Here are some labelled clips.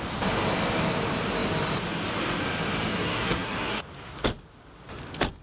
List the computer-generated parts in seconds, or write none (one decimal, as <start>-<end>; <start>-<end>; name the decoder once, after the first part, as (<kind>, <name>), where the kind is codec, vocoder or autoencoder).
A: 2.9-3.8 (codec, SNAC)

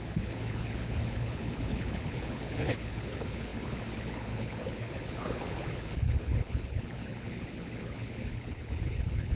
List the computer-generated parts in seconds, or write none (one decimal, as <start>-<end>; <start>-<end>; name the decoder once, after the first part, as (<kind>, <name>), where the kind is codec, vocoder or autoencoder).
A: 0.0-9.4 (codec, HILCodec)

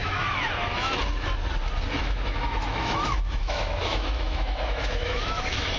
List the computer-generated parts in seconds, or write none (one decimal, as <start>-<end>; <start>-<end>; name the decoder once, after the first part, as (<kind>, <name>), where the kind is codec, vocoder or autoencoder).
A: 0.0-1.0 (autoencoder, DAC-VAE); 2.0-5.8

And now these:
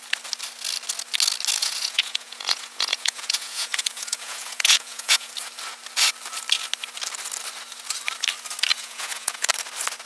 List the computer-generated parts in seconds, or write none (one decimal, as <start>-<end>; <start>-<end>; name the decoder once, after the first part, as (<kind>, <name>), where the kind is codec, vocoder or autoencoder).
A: 1.6-5.3 (vocoder, Vocos); 8.7-9.5

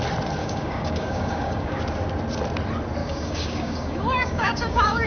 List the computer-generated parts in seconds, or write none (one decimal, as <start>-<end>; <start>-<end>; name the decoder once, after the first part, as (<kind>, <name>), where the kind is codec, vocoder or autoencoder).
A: 0.4-1.8 (codec, DAC); 3.0-5.1